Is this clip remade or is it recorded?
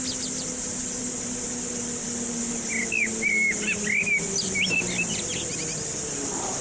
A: recorded